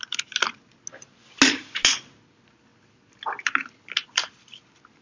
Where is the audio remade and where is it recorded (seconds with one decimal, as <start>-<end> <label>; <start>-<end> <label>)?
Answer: 0.0-5.0 recorded